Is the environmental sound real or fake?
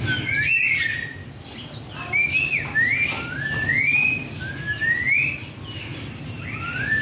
real